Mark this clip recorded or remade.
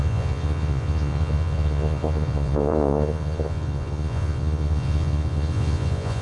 remade